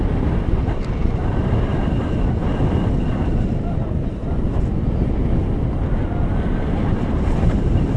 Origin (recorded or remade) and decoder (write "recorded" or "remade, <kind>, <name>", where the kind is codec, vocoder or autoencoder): recorded